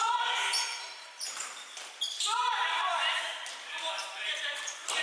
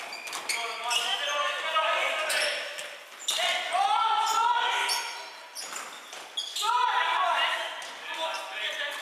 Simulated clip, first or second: first